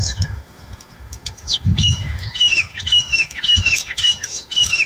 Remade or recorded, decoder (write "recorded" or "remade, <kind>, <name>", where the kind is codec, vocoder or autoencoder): remade, autoencoder, DAC-VAE